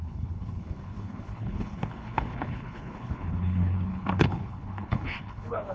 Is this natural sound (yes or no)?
no